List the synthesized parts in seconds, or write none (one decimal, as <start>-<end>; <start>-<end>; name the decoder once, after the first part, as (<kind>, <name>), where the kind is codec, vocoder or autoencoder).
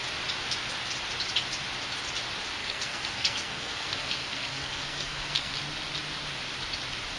2.6-5.5 (codec, SNAC)